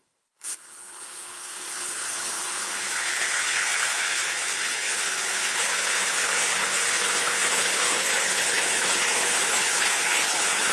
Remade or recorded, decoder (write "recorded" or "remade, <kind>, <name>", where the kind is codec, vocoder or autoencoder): remade, codec, HILCodec